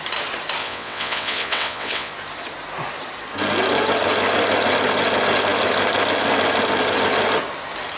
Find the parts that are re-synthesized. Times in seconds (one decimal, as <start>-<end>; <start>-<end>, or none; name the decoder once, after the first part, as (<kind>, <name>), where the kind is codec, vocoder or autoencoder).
0.6-2.1 (vocoder, WaveNeXt)